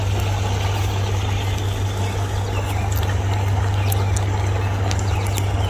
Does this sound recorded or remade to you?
recorded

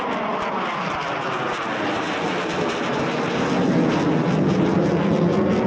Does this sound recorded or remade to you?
recorded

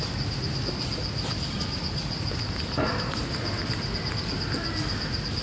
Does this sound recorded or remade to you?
recorded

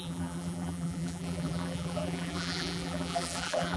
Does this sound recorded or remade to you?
remade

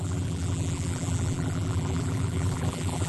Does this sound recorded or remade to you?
remade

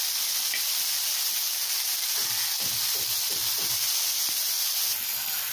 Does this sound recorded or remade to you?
recorded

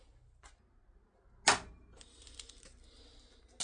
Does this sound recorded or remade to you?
recorded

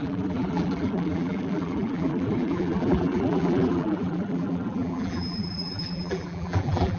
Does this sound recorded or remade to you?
remade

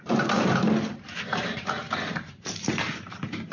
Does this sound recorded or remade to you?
remade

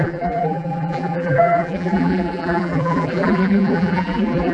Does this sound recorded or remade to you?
remade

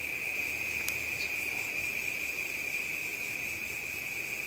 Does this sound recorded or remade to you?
recorded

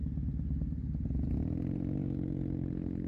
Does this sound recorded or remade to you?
recorded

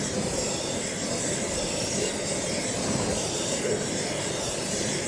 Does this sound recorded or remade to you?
remade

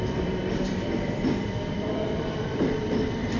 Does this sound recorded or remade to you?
remade